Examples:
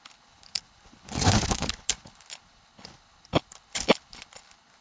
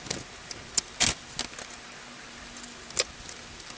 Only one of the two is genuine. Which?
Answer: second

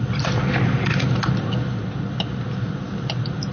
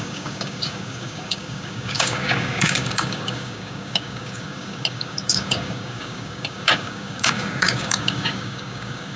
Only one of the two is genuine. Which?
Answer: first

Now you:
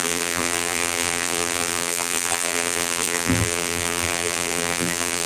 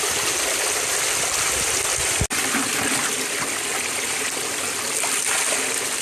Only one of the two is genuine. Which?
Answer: second